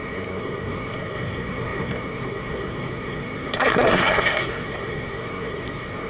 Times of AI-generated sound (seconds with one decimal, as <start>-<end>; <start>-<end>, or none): 0.0-6.1